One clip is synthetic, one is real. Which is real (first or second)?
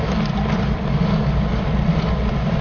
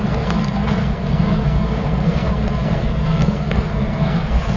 first